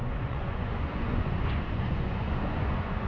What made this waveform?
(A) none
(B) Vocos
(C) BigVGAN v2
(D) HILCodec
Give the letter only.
B